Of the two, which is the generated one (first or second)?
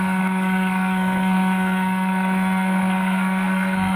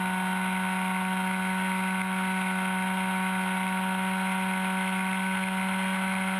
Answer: first